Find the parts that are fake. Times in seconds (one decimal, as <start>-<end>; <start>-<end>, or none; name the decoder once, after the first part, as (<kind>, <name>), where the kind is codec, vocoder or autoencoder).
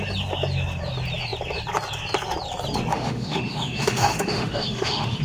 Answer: 2.9-5.2 (autoencoder, DAC-VAE)